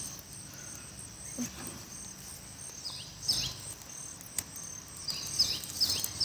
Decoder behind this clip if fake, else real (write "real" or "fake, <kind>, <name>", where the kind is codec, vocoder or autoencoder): real